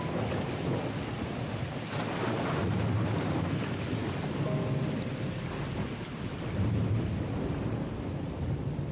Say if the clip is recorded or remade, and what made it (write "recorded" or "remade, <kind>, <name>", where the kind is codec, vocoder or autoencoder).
recorded